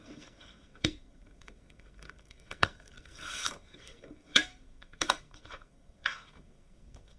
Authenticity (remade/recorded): remade